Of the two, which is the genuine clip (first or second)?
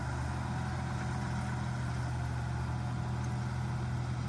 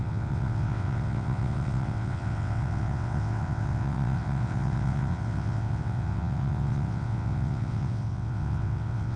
first